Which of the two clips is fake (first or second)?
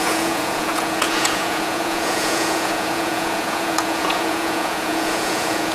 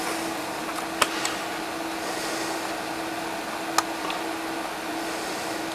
first